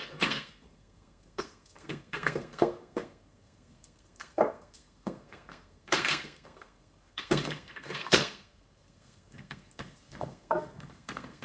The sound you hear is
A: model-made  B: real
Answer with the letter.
A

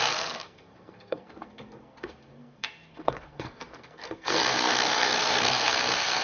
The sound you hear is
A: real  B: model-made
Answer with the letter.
B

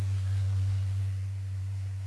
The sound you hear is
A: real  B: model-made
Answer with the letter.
B